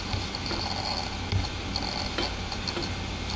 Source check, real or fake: real